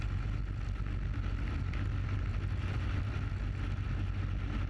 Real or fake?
real